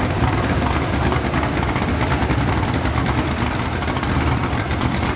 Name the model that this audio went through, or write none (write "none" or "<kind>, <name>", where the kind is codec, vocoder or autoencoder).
vocoder, BigVGAN v2